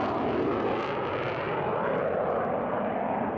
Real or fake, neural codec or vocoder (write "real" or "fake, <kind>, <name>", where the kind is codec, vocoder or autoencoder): real